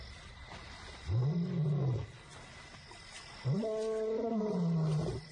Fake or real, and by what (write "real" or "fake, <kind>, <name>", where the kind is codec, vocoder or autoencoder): real